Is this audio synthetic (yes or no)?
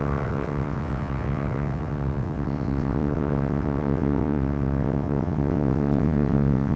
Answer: yes